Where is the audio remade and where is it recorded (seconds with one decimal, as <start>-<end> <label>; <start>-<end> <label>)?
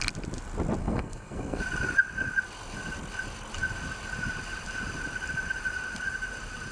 0.0-0.8 recorded; 0.8-1.6 remade; 1.6-6.7 recorded